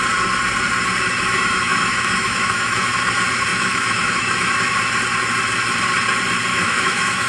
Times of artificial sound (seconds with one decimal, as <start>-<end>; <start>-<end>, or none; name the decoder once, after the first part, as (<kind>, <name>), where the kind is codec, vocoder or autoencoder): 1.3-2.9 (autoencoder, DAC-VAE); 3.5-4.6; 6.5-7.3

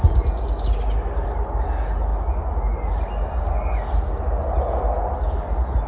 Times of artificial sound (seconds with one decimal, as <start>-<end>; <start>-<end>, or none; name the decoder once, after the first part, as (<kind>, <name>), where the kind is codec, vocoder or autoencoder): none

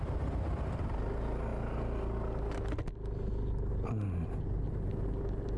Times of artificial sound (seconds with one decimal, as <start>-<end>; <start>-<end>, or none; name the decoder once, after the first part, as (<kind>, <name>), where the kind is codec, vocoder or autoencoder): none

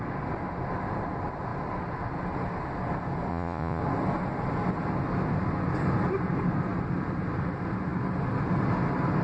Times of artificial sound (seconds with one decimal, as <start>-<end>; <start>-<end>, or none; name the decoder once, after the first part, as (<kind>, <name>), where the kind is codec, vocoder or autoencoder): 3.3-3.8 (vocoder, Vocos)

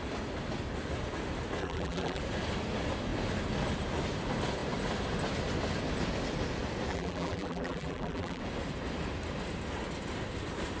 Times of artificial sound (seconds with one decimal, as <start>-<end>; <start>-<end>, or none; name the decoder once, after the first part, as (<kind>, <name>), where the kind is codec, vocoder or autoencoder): 1.6-2.2 (vocoder, BigVGAN v2); 6.9-8.4

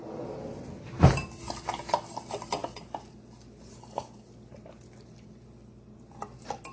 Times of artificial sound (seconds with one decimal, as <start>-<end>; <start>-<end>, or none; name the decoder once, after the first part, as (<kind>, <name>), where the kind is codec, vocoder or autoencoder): none

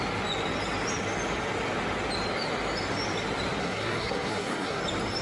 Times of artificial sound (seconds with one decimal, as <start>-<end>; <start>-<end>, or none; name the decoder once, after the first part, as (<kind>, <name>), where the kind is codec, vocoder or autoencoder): 3.6-4.8 (codec, SNAC)

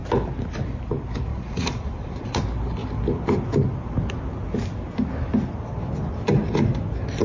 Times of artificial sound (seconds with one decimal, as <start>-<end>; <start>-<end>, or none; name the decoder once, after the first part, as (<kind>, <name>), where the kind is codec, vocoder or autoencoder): 1.3-2.4 (vocoder, Vocos)